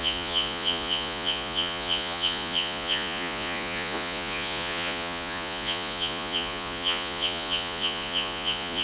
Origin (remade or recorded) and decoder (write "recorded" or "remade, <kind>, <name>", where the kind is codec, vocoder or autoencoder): remade, vocoder, Vocos